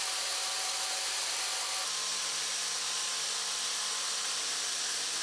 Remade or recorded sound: recorded